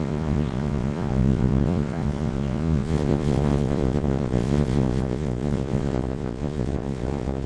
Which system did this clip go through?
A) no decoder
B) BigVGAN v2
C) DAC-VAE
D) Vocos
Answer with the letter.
D